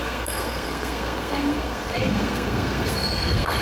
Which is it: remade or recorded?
remade